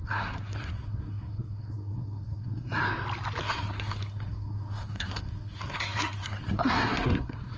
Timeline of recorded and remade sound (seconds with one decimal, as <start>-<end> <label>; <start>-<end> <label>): 0.0-2.8 remade; 2.8-3.4 recorded; 3.4-7.6 remade